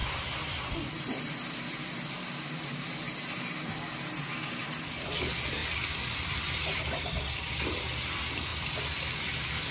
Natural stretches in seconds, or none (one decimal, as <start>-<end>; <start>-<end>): 2.9-8.5; 9.2-9.7

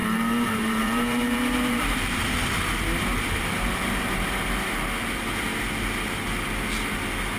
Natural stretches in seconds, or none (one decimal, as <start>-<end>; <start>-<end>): 4.4-7.4

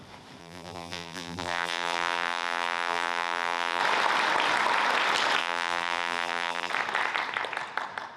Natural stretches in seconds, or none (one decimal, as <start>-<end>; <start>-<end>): 0.0-0.4; 3.8-5.4; 6.7-8.2

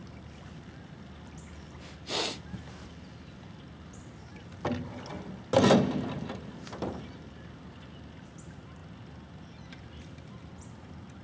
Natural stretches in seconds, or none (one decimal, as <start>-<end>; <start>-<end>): 0.0-11.2

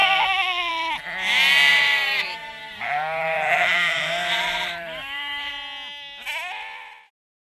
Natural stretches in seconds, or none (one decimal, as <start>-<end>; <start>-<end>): 0.0-1.7; 5.5-7.5